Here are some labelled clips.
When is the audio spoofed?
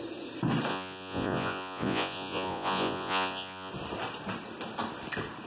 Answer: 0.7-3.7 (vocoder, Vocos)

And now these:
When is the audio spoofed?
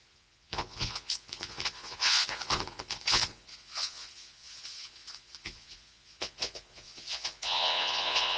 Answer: 0.0-8.4 (vocoder, Vocos)